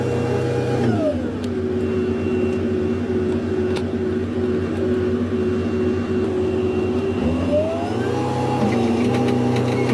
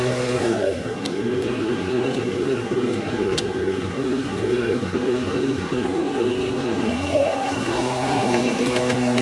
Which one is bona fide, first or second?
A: first